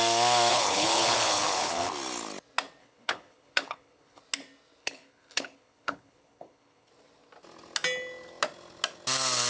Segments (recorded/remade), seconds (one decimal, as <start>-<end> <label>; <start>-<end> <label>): 0.0-0.5 recorded; 0.5-1.9 remade; 1.9-2.8 recorded; 2.8-4.2 remade; 4.2-4.8 recorded; 4.8-6.9 remade; 6.9-9.5 recorded